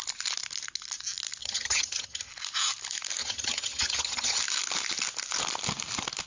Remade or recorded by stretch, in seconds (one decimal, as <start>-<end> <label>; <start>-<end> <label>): 0.0-1.4 recorded; 1.4-2.3 remade; 2.3-3.2 recorded; 3.2-4.4 remade; 4.4-6.3 recorded